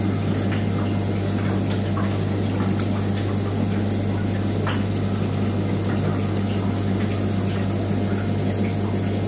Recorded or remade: recorded